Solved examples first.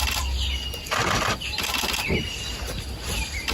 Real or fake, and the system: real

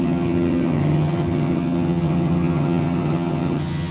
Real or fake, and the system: fake, vocoder, HiFi-GAN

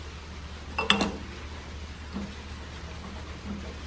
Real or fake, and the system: real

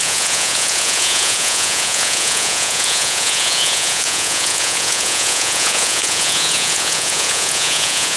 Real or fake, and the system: fake, vocoder, Vocos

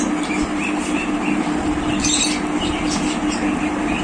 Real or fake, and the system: real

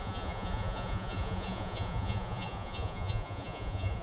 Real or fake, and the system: fake, vocoder, Vocos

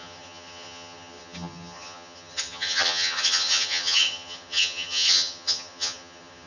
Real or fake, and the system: fake, vocoder, HiFi-GAN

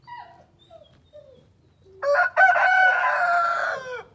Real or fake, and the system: real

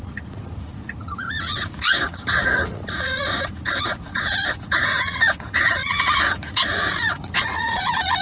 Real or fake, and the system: fake, vocoder, Vocos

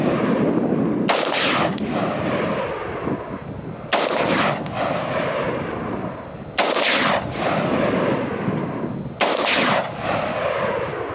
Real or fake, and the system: real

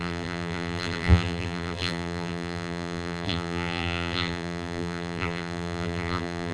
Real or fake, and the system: fake, vocoder, BigVGAN v2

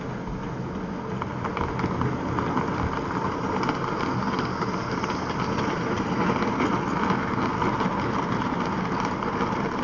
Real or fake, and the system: real